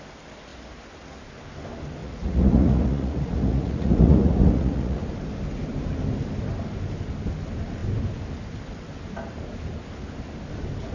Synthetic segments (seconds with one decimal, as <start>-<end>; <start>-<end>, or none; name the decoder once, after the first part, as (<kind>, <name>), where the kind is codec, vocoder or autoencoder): 2.0-5.0 (vocoder, Vocos)